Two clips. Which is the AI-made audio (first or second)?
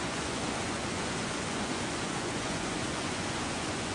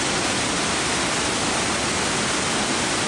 first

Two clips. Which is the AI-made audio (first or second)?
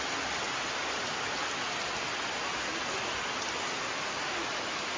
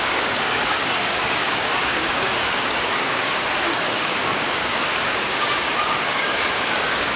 second